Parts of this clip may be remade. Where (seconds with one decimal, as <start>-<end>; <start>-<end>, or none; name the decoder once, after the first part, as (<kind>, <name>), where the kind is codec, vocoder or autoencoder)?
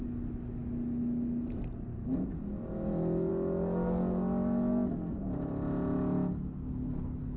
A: none